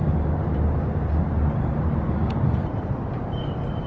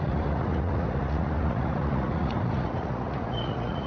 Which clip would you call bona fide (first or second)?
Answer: first